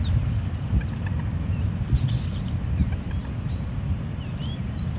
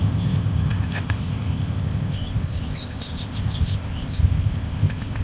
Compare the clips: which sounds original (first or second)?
first